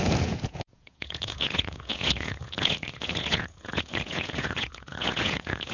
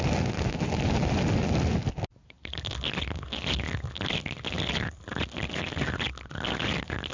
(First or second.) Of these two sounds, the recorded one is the second